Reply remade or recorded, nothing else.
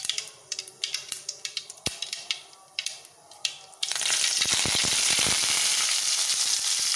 remade